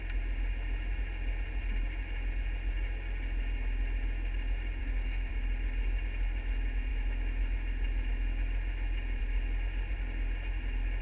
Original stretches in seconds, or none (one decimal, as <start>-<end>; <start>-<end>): 0.0-4.8; 5.3-11.0